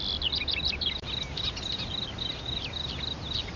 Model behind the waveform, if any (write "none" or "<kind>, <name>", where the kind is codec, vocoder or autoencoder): none